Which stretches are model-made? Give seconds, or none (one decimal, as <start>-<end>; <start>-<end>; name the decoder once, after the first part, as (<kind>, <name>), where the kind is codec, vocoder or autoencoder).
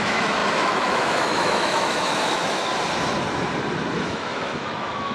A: 0.0-2.7 (autoencoder, DAC-VAE); 4.0-5.1